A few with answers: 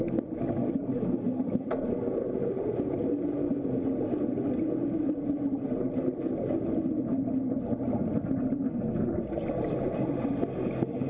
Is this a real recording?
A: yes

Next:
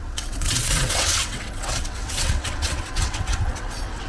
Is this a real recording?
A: no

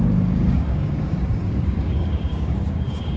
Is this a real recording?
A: no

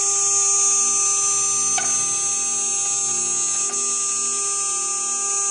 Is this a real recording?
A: yes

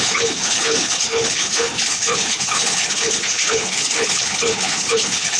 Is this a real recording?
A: no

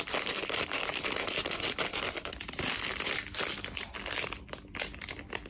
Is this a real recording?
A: yes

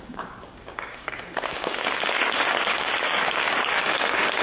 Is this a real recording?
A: no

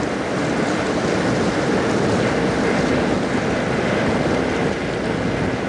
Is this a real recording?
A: yes